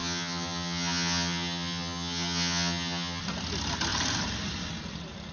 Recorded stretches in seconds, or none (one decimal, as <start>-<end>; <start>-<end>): 3.2-5.3